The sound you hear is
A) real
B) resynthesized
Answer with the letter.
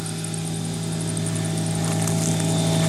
A